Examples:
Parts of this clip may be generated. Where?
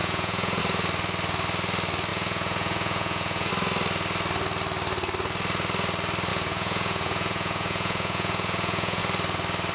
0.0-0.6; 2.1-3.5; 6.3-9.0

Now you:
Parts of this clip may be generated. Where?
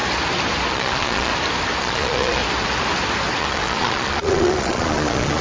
0.7-1.3; 1.8-2.4; 3.4-5.4